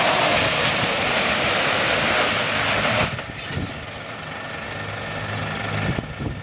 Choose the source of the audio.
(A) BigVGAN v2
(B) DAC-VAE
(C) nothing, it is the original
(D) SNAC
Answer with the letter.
C